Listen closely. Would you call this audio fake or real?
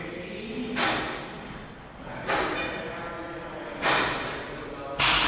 real